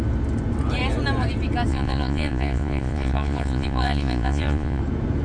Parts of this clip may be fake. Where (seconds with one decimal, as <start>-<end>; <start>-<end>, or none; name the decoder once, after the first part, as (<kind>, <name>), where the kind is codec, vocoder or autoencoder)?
1.7-4.8 (vocoder, Vocos)

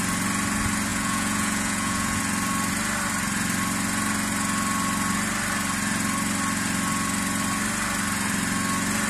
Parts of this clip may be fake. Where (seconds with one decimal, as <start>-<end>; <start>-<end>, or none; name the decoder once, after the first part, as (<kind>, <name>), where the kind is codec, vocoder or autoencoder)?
0.9-2.2 (vocoder, Vocos)

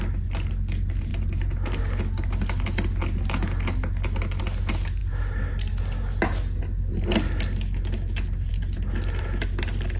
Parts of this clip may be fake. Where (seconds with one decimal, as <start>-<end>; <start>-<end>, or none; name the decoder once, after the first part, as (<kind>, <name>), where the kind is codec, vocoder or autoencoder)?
none

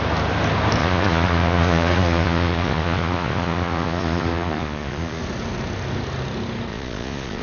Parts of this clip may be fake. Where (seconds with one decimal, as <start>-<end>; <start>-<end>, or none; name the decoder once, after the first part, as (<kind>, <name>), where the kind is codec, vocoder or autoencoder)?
0.8-5.2 (vocoder, Vocos); 6.7-7.4

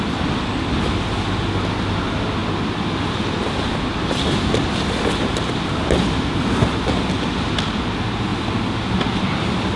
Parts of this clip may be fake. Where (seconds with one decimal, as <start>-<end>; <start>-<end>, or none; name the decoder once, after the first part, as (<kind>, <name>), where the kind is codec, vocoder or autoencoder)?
none

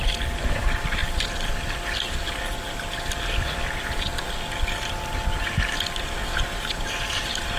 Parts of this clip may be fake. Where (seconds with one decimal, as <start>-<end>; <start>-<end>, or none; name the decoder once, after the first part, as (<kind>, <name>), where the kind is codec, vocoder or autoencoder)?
none

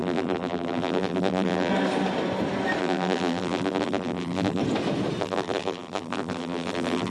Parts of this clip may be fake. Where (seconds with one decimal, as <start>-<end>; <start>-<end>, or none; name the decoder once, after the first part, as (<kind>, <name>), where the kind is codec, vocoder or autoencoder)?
0.0-1.7 (vocoder, BigVGAN v2); 2.8-4.6; 5.2-7.1

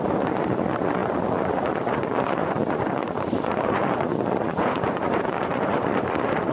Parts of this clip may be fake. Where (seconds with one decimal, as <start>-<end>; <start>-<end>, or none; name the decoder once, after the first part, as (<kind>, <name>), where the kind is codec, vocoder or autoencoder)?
0.0-6.5 (vocoder, Vocos)